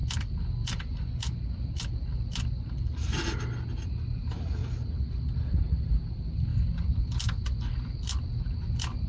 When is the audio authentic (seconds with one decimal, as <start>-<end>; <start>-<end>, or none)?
0.0-9.1